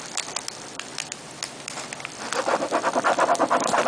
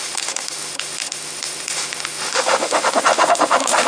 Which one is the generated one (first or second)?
second